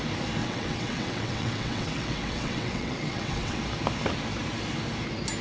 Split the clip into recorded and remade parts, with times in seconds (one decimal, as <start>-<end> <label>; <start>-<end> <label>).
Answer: 0.0-0.4 recorded; 0.4-3.6 remade; 3.6-5.4 recorded